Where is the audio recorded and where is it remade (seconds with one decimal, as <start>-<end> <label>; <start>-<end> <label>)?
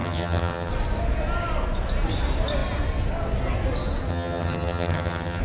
0.0-0.7 remade; 0.7-4.1 recorded; 4.1-5.4 remade